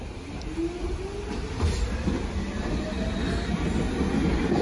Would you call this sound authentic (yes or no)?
yes